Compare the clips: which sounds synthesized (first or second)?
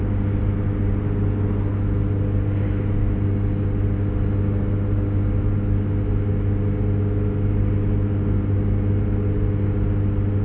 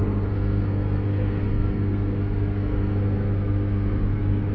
second